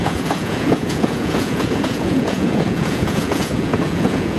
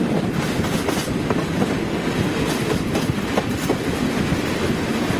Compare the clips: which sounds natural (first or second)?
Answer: second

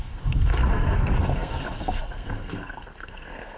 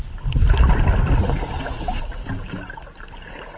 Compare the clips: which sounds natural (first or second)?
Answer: second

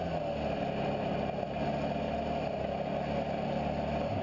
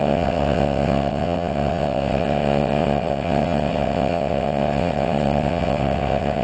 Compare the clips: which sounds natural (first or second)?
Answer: first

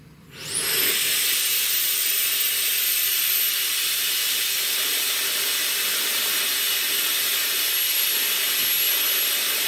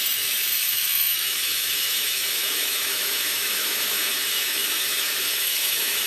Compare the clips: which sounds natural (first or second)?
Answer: first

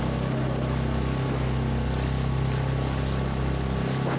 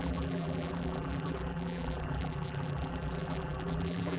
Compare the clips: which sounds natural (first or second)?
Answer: first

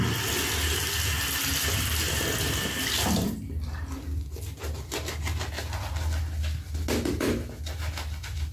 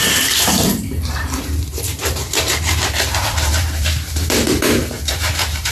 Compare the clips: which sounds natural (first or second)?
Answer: first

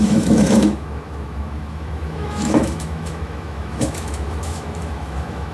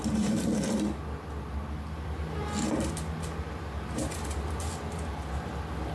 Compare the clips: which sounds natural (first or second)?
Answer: second